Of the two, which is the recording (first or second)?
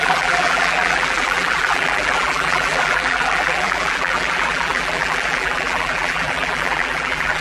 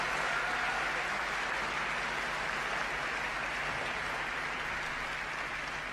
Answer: second